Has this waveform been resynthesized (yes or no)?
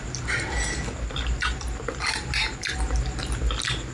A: no